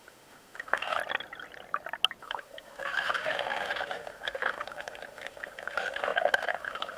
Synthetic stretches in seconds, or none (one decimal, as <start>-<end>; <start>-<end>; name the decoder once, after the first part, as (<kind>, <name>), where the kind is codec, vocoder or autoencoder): 0.0-1.0 (autoencoder, DAC-VAE); 2.2-7.0